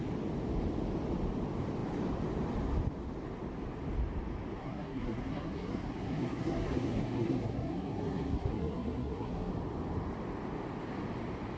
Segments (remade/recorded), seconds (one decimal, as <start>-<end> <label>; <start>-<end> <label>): 0.0-4.6 recorded; 4.6-9.5 remade; 9.5-11.6 recorded